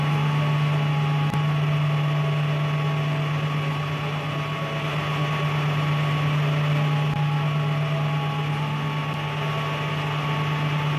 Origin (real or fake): real